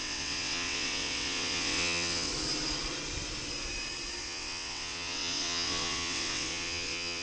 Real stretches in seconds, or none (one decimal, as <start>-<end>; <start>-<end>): 2.3-4.2